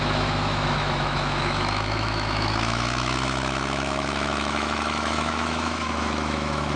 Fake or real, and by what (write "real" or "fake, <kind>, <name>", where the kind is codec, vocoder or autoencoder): fake, autoencoder, DAC-VAE